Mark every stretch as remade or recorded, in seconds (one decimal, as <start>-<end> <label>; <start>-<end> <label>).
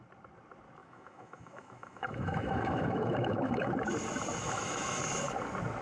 0.0-0.8 recorded; 0.8-3.7 remade; 3.7-4.4 recorded; 4.4-5.0 remade; 5.0-5.8 recorded